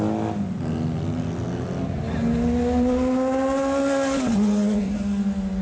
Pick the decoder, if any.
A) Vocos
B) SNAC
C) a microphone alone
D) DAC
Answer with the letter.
C